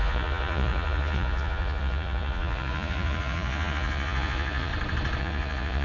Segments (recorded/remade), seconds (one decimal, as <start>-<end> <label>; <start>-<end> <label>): 0.0-4.7 remade; 4.7-5.2 recorded; 5.2-5.8 remade